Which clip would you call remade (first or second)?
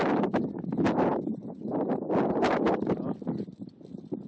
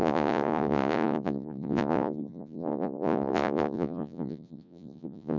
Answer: second